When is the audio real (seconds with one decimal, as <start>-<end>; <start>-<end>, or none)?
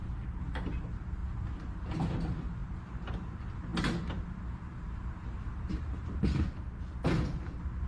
0.0-7.9